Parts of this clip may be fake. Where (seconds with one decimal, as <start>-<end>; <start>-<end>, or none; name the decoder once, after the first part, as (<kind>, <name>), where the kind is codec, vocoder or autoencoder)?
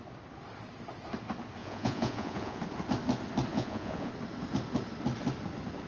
1.6-2.6 (vocoder, Vocos); 3.5-4.1